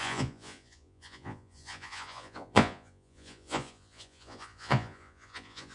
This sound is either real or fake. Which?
fake